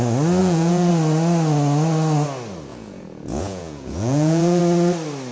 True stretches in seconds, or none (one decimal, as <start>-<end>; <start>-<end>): 0.0-0.4; 0.9-2.7; 4.6-5.3